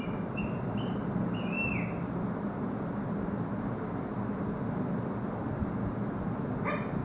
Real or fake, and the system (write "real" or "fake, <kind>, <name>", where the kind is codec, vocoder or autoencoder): real